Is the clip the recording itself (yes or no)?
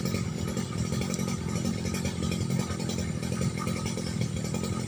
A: yes